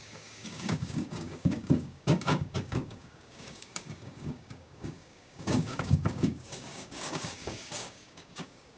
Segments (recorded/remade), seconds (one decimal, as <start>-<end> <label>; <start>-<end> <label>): 0.0-8.8 remade